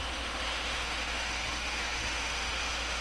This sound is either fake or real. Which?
fake